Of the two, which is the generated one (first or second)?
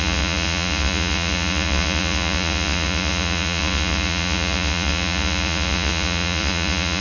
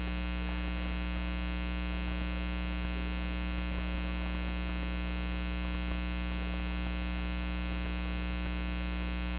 first